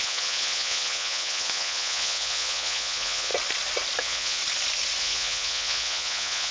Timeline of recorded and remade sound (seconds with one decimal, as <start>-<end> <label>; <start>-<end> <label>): 0.0-3.3 remade; 3.3-4.0 recorded; 4.0-4.4 remade; 4.4-5.0 recorded; 5.0-6.5 remade